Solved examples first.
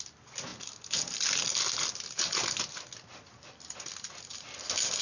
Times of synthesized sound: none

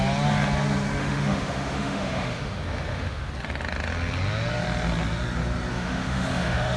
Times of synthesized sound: 1.0-3.3 (autoencoder, DAC-VAE); 5.7-6.8

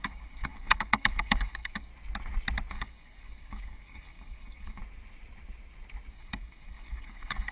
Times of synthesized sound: 0.0-1.9 (codec, DAC); 2.7-4.8; 6.1-7.5

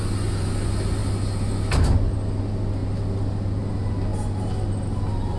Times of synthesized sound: none